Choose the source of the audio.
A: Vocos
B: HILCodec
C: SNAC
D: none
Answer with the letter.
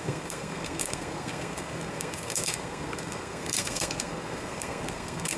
C